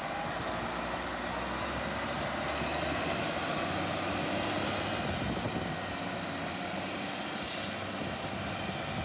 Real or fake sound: real